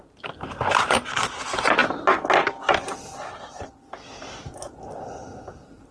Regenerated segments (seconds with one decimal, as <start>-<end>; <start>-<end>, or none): none

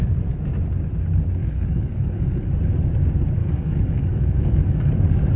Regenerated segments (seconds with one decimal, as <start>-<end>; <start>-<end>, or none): 1.4-2.5; 3.4-4.9